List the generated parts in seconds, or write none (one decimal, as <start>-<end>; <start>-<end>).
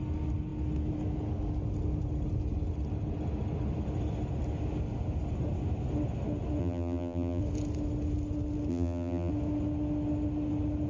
6.6-7.4; 8.7-9.3